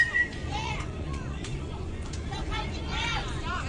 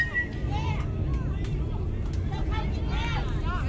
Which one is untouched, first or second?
second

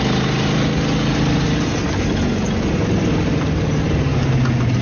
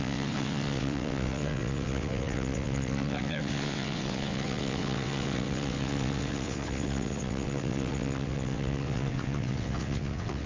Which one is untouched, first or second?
first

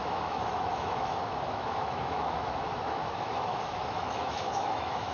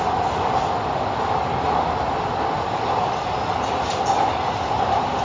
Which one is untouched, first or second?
second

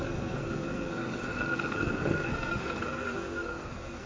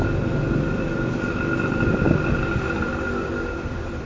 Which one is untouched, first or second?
second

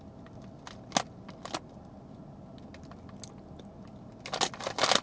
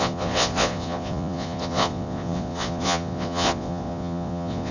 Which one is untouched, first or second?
first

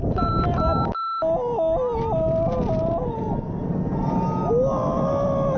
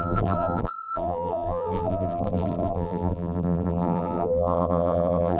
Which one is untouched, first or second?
first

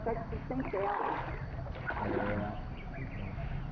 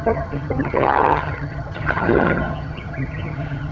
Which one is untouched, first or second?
first